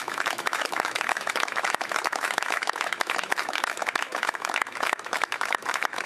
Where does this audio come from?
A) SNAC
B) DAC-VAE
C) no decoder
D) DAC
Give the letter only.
B